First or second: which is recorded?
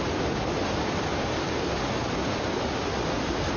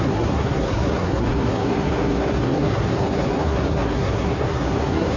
first